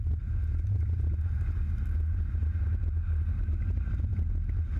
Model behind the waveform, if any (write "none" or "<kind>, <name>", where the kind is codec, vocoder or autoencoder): none